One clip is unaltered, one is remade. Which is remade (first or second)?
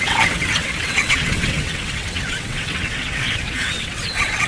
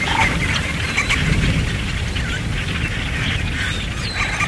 first